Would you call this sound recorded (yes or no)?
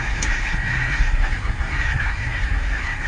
no